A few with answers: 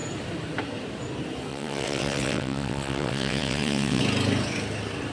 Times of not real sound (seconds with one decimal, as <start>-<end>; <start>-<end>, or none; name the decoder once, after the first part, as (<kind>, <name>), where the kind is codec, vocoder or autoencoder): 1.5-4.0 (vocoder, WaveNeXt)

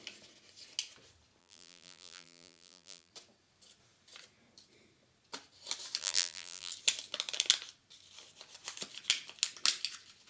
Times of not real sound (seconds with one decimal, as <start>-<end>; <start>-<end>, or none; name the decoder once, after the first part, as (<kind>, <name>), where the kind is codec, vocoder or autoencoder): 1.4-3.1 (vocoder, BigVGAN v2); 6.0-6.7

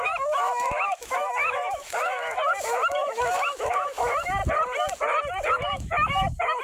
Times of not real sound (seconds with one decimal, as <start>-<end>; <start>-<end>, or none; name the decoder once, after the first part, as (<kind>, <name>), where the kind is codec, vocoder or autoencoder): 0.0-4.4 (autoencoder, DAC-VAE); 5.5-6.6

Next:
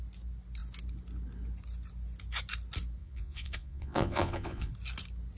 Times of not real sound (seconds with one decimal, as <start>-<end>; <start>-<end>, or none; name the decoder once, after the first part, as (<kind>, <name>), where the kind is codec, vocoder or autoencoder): 3.0-4.7 (vocoder, Vocos)

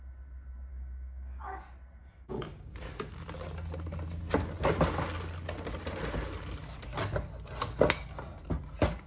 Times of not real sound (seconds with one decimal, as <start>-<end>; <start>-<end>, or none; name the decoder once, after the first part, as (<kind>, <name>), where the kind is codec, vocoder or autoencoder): 0.7-1.6 (codec, DAC); 2.0-2.7